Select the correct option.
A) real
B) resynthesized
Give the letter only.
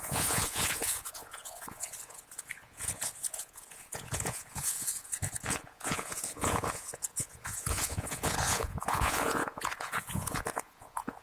B